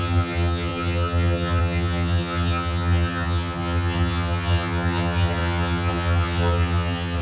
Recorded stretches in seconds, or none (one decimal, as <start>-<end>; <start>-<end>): none